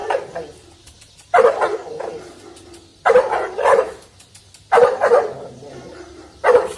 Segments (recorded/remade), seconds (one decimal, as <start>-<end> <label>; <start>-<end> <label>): 0.0-2.9 recorded; 2.9-4.3 remade; 4.3-6.8 recorded